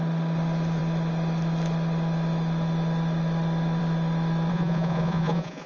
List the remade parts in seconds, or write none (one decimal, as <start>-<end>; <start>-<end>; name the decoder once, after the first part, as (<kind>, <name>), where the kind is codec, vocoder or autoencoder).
4.5-5.7 (vocoder, Vocos)